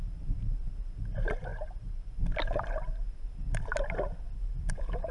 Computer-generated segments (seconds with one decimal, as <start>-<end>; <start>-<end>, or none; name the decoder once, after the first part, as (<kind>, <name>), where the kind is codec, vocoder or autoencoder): 1.5-2.2 (vocoder, BigVGAN v2)